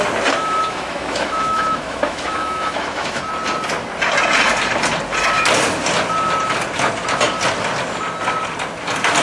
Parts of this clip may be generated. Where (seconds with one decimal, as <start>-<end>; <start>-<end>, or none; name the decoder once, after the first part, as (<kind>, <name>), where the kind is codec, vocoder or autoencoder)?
0.4-3.2 (autoencoder, DAC-VAE)